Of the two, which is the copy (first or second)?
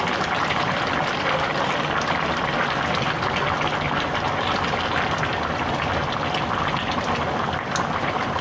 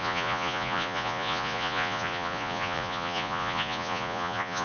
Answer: second